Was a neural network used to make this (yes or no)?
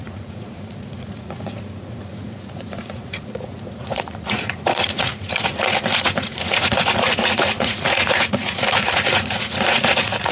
yes